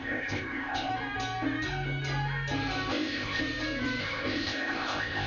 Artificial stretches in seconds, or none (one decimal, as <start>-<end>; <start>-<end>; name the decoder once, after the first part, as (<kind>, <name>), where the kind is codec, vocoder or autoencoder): 0.0-0.9 (codec, ZipCodec); 2.9-3.4; 4.0-5.3